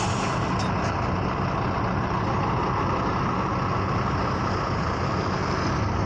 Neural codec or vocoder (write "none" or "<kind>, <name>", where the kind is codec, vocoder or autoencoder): none